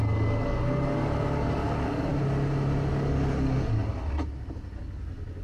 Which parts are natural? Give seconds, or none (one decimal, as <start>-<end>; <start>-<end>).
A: 2.1-2.9; 3.8-5.4

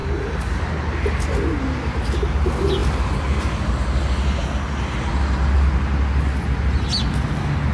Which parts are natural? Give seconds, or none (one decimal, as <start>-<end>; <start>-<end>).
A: 0.6-7.7